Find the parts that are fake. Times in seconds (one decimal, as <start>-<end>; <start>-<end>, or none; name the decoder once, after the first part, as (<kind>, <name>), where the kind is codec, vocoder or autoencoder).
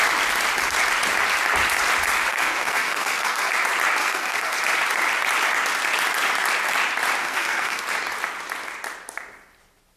2.3-3.5 (codec, SNAC); 4.0-4.6; 7.2-7.8